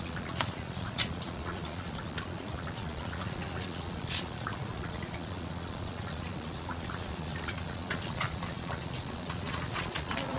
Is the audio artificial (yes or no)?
yes